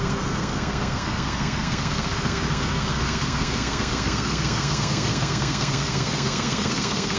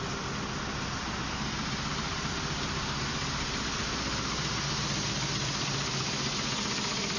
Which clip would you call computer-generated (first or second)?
first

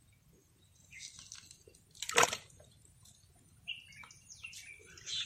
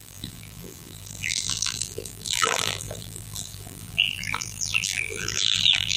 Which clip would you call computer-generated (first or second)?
second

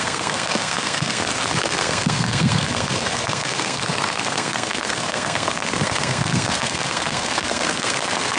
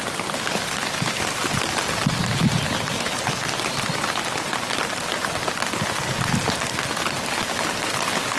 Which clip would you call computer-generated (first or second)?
first